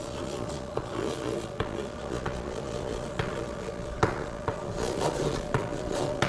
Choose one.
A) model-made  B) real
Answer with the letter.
A